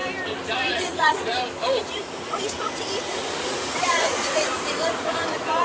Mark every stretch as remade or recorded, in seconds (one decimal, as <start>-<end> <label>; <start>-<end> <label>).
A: 0.0-0.7 recorded; 0.7-1.3 remade; 1.3-1.8 recorded; 1.8-5.6 remade